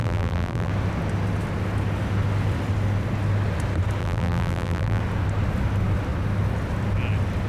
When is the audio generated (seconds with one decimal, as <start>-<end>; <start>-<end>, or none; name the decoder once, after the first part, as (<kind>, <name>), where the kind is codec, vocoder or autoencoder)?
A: 0.0-0.7 (vocoder, BigVGAN v2); 4.0-5.0